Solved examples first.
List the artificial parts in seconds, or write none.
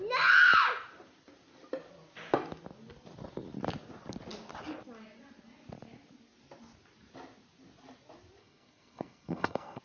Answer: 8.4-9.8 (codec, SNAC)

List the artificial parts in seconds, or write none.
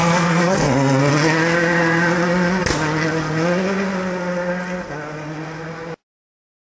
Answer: 0.0-1.0 (codec, SNAC)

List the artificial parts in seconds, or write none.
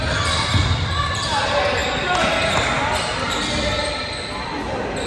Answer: none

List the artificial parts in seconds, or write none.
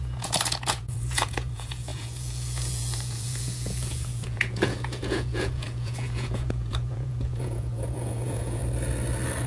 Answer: 0.0-8.6 (vocoder, Vocos)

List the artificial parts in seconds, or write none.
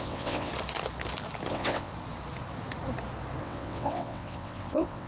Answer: 0.0-0.5 (vocoder, WaveNeXt); 1.5-1.9; 3.4-5.1